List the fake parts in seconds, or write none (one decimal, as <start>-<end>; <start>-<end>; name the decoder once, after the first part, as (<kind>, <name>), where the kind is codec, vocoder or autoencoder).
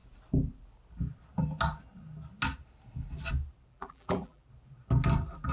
3.7-4.4 (vocoder, BigVGAN v2)